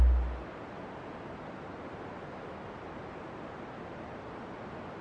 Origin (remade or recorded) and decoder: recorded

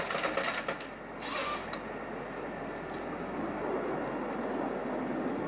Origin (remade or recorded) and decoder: recorded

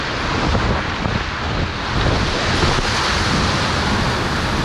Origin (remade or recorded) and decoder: recorded